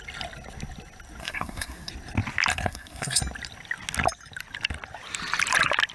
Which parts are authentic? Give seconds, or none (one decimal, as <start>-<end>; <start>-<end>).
0.0-1.2; 1.9-2.5; 3.2-5.9

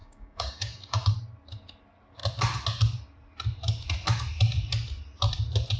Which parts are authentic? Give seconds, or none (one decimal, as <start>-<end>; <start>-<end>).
1.1-5.8

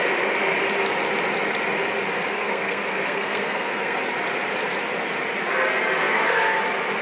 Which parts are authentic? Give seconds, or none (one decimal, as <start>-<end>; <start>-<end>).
0.0-2.3; 4.0-6.0; 6.6-7.0

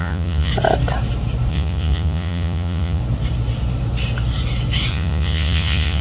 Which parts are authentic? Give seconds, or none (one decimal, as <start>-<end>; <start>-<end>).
0.5-1.5; 3.0-4.9

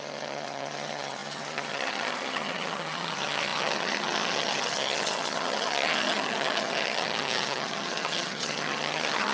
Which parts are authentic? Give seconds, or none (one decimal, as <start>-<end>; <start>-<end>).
none

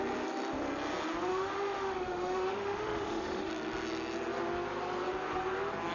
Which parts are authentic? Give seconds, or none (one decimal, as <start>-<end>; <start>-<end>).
0.0-1.3; 3.5-5.9

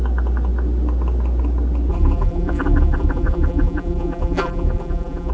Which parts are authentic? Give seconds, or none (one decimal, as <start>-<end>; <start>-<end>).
0.0-1.9